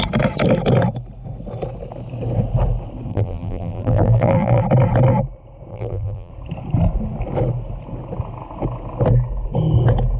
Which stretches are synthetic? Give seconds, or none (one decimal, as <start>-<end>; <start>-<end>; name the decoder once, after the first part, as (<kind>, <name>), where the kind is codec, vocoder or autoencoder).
3.1-4.6 (vocoder, BigVGAN v2); 5.7-6.3